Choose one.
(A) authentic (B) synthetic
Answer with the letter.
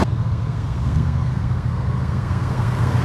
B